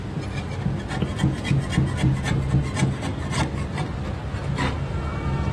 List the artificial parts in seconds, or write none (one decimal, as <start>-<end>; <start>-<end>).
1.1-2.6

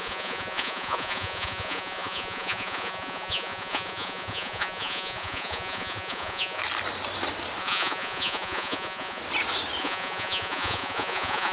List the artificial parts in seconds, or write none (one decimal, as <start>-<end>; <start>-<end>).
0.0-6.6; 7.6-9.2; 9.8-11.5

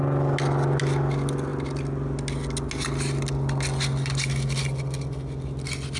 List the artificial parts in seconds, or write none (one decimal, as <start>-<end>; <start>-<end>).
none

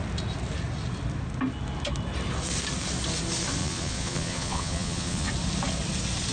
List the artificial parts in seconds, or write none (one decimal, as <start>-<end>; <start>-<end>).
3.6-5.3

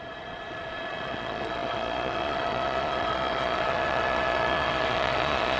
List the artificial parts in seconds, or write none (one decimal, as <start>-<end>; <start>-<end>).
0.0-5.6